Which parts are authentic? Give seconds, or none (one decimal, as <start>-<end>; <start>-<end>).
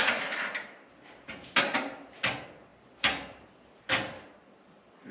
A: 0.0-5.1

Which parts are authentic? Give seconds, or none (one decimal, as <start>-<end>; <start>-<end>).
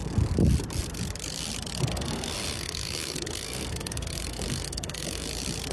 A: 0.0-1.9; 5.3-5.7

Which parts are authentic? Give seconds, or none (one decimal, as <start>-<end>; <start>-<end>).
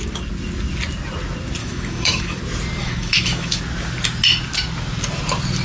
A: 0.0-1.6; 2.4-2.8; 3.6-5.6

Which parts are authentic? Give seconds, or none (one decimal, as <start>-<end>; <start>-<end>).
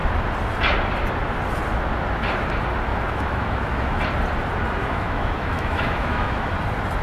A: 0.0-2.9; 4.0-4.8; 6.5-7.0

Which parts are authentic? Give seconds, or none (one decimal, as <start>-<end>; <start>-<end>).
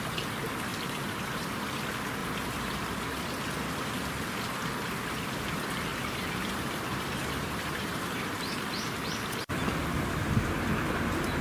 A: 0.0-0.7; 1.6-2.2; 3.2-5.9; 8.6-11.4